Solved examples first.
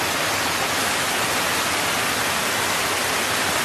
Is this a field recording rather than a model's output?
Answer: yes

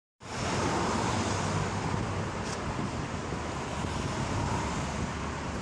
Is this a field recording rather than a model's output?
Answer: yes